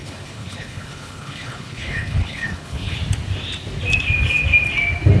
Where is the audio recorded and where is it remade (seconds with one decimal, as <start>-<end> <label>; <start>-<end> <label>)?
0.0-3.0 remade; 3.0-5.2 recorded